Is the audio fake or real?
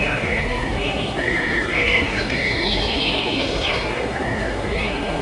fake